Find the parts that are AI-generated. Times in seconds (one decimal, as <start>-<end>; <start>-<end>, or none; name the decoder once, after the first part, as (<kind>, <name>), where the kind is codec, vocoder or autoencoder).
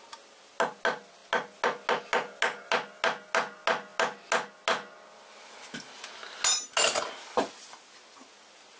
none